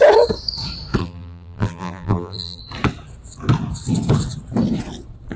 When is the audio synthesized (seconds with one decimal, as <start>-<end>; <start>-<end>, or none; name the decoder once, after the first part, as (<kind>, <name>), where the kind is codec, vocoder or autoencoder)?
1.0-2.6 (vocoder, BigVGAN v2)

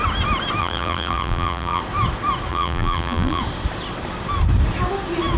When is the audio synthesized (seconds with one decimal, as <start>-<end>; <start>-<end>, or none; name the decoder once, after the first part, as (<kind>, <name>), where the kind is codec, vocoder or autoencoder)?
0.6-1.8 (vocoder, BigVGAN v2); 2.5-3.4

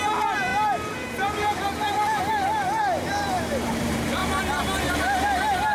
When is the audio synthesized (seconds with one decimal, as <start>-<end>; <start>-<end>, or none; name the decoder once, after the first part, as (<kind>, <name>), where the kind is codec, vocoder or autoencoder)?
0.0-4.2 (vocoder, BigVGAN v2); 5.0-5.7

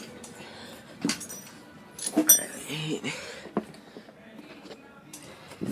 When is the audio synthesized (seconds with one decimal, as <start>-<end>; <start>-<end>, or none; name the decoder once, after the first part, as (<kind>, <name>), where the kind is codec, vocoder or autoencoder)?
none

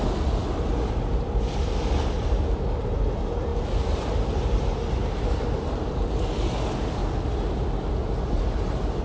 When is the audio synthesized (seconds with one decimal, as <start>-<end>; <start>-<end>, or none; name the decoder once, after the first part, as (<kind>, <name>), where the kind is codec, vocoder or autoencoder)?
2.2-7.0 (vocoder, BigVGAN v2); 8.3-9.0

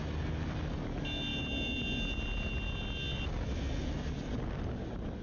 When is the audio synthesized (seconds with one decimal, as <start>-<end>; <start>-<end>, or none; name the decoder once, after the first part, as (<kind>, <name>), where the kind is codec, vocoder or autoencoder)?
none

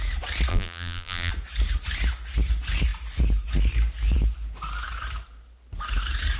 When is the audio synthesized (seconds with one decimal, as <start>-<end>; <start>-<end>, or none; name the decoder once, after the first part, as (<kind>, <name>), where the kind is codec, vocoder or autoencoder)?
0.5-1.3 (vocoder, BigVGAN v2)

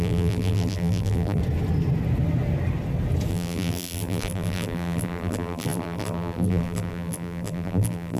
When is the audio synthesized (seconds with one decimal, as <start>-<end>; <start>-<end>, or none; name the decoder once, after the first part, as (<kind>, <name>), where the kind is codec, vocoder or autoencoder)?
0.0-1.4 (vocoder, BigVGAN v2); 3.3-8.2